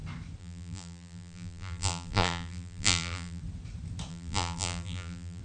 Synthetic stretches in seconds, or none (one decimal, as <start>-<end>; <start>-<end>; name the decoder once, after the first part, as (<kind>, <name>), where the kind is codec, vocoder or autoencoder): 0.4-3.4 (vocoder, BigVGAN v2); 4.1-5.4